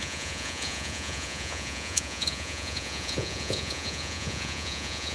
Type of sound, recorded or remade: remade